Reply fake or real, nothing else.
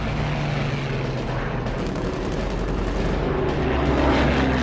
real